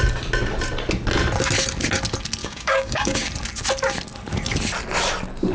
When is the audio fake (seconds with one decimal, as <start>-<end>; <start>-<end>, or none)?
2.4-3.3